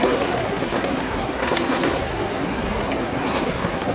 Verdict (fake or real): fake